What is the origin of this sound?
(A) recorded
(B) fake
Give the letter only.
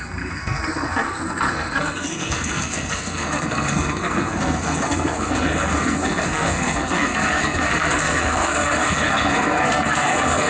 B